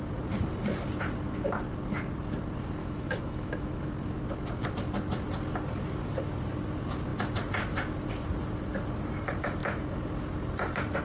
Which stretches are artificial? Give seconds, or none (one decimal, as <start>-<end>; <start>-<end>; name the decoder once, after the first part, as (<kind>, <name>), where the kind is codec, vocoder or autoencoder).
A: 2.8-3.9 (autoencoder, DAC-VAE)